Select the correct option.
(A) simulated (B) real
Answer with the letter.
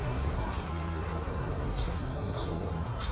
A